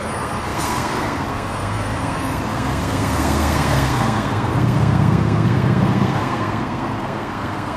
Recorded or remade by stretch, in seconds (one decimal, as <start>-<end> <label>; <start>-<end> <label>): 0.0-7.8 remade